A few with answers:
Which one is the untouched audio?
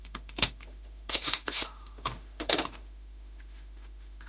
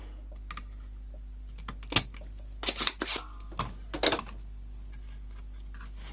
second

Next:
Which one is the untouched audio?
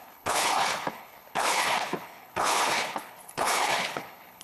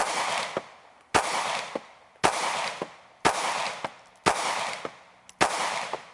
second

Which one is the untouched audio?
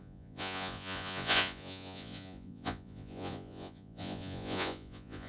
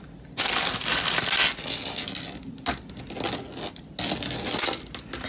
second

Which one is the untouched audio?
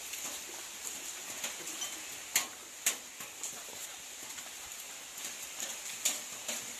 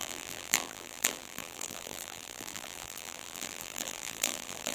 first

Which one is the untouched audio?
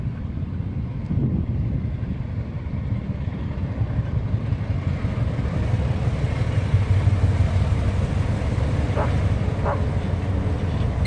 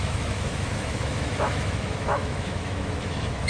first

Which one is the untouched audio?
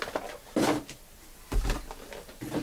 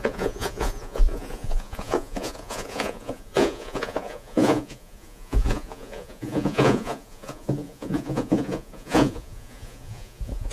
first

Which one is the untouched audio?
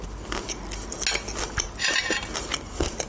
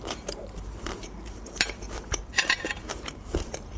first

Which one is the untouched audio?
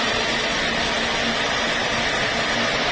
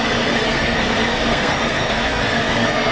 first